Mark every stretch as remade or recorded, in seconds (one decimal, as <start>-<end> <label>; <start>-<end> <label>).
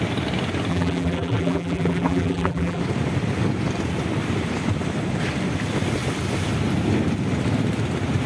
0.0-0.7 recorded; 0.7-2.8 remade; 2.8-8.3 recorded